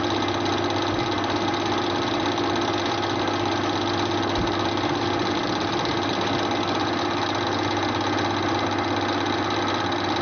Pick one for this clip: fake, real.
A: real